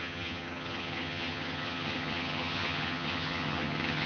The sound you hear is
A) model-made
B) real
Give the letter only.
A